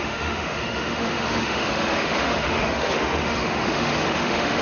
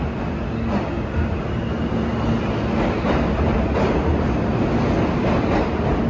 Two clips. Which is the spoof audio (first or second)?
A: first